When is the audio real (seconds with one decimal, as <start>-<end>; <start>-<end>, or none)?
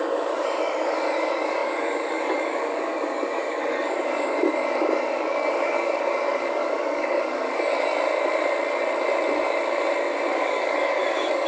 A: 7.9-10.3